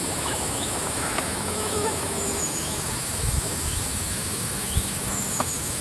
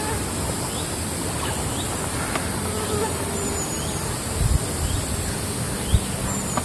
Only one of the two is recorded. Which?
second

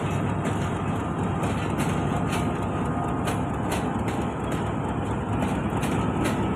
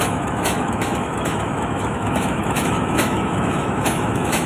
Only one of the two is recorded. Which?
first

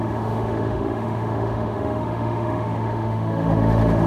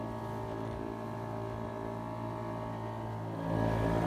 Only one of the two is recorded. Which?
second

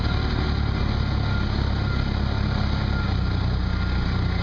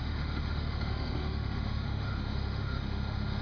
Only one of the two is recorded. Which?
first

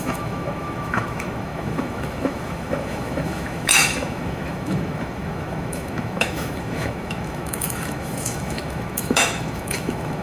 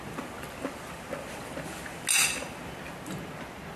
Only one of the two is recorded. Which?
second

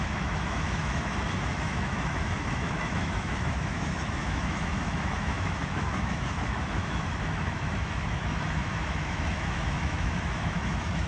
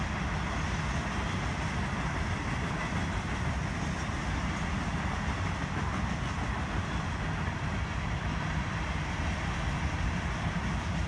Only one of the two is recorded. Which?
second